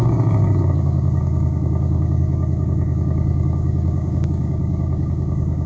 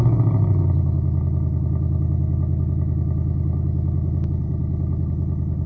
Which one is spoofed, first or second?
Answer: first